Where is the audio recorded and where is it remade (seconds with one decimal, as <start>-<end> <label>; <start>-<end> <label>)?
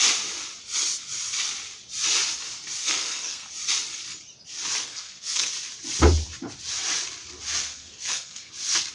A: 0.0-2.8 recorded; 2.8-3.5 remade; 3.5-4.8 recorded; 4.8-5.5 remade; 5.5-7.6 recorded; 7.6-8.5 remade; 8.5-8.9 recorded